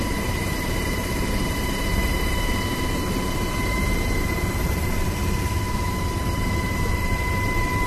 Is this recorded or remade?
remade